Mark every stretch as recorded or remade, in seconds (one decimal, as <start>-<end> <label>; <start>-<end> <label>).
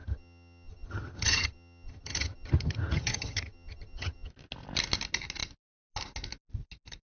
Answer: 0.0-4.3 remade; 4.3-7.1 recorded